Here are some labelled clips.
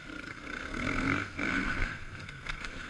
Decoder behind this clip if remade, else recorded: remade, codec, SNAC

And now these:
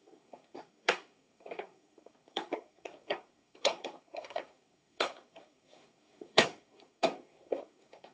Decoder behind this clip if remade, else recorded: remade, codec, SNAC